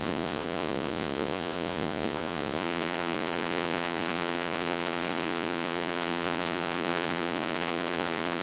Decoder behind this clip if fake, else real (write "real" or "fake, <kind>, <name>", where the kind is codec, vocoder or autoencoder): fake, vocoder, Vocos